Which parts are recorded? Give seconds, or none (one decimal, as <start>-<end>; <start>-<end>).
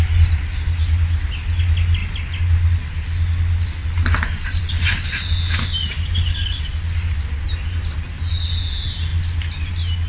0.0-10.1